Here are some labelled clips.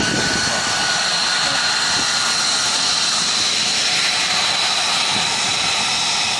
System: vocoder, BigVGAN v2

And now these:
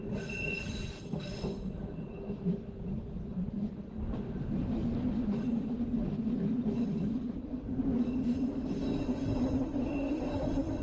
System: none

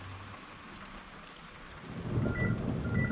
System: none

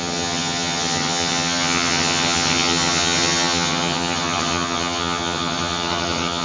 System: vocoder, HiFi-GAN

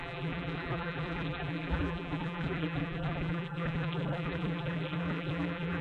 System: vocoder, BigVGAN v2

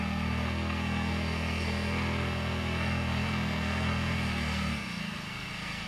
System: codec, SNAC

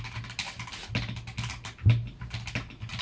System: none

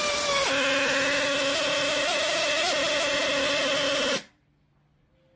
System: none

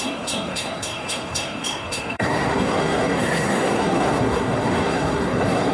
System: codec, SNAC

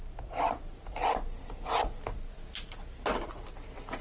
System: none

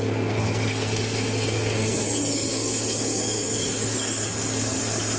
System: codec, SNAC